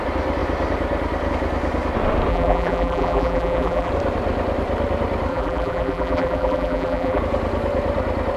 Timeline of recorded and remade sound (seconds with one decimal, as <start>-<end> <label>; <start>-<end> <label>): 0.0-2.3 recorded; 2.3-3.9 remade; 3.9-5.3 recorded; 5.3-7.2 remade; 7.2-8.4 recorded